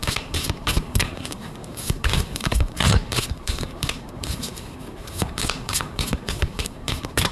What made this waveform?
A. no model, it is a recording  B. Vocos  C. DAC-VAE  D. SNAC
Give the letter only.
D